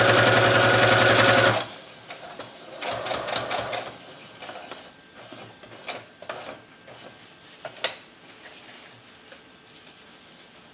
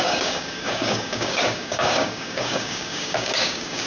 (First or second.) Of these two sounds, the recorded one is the first